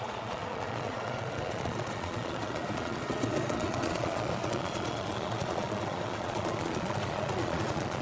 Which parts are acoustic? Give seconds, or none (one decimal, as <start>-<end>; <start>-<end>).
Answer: none